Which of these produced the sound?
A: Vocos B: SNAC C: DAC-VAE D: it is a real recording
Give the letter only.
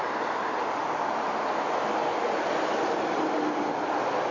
D